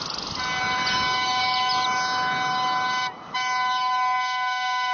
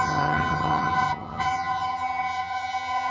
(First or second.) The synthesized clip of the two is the second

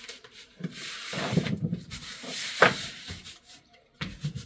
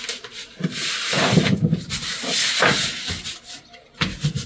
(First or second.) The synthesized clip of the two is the first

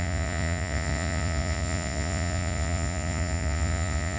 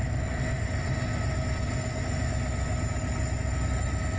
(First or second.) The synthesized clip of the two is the first